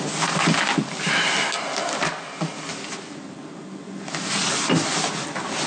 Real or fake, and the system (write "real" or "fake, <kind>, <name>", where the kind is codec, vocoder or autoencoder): real